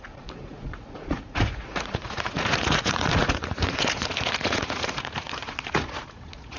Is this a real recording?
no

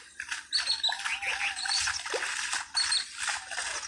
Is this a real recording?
yes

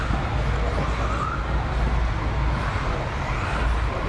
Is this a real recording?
yes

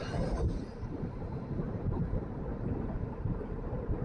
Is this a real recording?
no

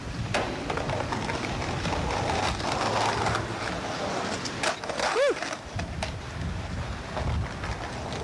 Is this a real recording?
yes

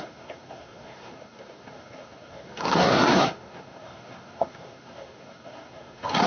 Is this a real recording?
no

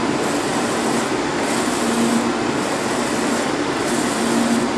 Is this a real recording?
yes